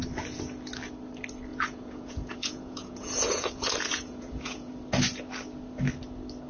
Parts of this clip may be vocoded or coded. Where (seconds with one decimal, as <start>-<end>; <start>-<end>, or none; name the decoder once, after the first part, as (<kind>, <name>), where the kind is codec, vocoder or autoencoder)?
1.5-4.7 (vocoder, Vocos)